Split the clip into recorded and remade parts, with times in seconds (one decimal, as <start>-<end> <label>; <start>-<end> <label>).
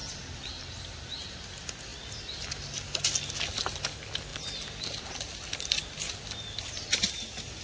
0.0-0.5 remade; 0.5-4.3 recorded; 4.3-7.1 remade; 7.1-7.6 recorded